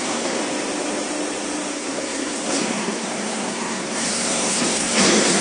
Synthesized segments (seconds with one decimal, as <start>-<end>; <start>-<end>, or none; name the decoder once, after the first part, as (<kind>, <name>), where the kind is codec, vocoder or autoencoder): 0.0-0.4 (codec, SNAC); 1.7-5.4